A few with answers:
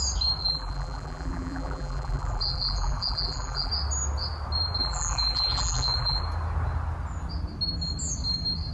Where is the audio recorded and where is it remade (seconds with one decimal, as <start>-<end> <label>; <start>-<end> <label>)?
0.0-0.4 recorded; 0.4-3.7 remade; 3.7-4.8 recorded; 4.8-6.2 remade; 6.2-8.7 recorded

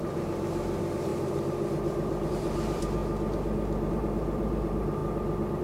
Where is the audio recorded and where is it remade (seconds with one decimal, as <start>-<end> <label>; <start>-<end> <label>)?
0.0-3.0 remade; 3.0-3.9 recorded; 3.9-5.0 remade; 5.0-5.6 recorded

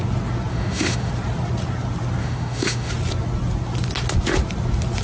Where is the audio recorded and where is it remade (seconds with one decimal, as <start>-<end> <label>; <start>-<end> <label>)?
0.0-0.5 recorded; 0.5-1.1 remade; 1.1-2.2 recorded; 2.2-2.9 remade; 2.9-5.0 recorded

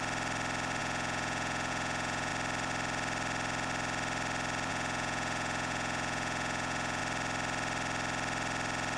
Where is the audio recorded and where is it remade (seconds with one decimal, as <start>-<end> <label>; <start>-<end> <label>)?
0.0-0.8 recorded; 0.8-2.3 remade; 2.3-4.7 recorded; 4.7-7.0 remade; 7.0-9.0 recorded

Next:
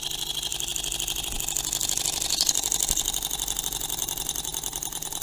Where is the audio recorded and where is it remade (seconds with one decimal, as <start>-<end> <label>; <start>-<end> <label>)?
0.0-5.2 recorded

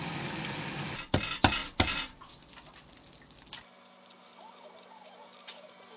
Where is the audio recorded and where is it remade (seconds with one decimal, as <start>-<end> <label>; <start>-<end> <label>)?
0.0-6.0 recorded

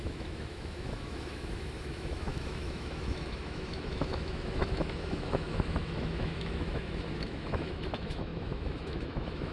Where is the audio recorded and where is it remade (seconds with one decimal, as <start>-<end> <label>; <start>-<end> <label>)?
0.0-9.5 remade

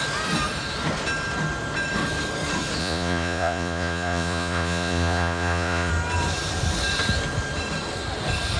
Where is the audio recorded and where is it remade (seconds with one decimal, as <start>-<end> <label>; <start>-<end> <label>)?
0.0-2.8 recorded; 2.8-5.9 remade; 5.9-8.6 recorded